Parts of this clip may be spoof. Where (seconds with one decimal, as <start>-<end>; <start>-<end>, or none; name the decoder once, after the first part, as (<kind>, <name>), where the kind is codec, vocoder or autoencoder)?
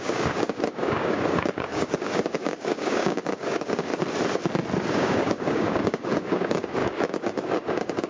0.0-3.9 (codec, DAC); 4.9-8.1